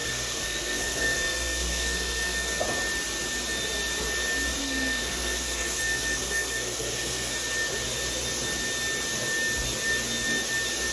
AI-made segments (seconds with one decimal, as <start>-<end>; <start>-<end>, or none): 0.0-2.6; 4.6-7.3